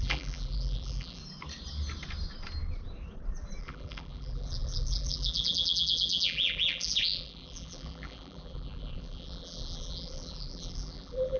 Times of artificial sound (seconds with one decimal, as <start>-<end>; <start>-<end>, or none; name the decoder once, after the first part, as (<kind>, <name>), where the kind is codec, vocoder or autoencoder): 0.0-1.2 (vocoder, BigVGAN v2); 3.6-11.4